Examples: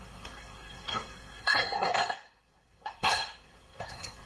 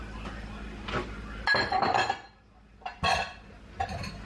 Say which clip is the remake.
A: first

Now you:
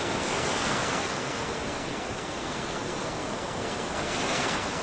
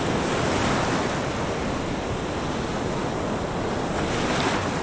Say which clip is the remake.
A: first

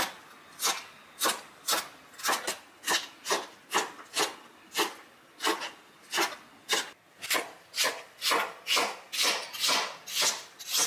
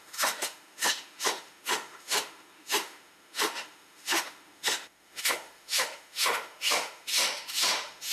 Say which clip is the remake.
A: second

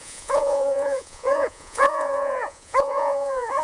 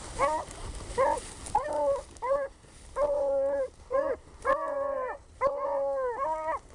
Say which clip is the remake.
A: first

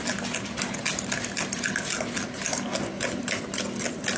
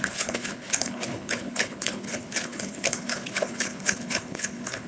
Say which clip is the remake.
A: second